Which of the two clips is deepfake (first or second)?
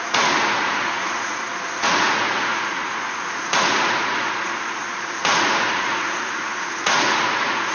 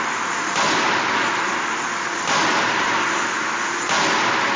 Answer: first